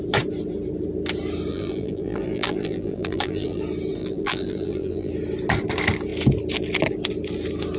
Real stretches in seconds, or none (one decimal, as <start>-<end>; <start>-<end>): 0.0-1.5; 3.6-4.0; 5.1-7.8